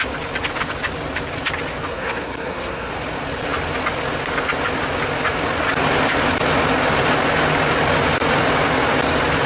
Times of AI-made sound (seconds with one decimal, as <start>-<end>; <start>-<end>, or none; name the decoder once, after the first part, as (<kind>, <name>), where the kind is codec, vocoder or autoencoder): 1.9-2.9 (codec, SNAC)